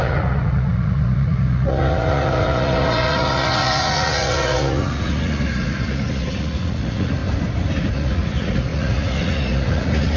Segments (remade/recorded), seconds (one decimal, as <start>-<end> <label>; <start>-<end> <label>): 0.0-7.2 remade; 7.2-7.9 recorded; 7.9-10.2 remade